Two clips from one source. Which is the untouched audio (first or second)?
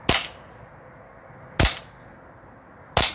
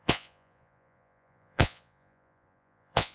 first